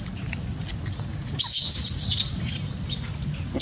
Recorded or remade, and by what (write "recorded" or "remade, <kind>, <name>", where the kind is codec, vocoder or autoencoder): recorded